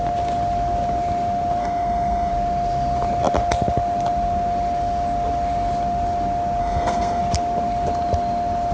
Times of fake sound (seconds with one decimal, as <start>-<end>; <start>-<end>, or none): 1.6-2.3; 6.6-7.2